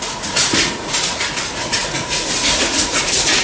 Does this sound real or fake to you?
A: fake